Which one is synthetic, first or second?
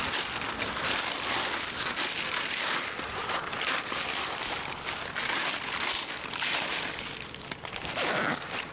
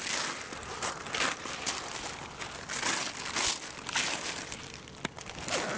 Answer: first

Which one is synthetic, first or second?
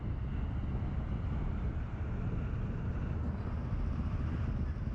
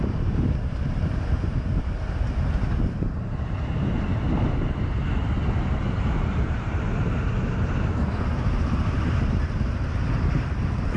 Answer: second